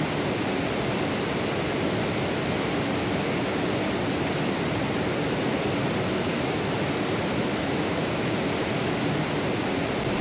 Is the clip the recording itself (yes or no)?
yes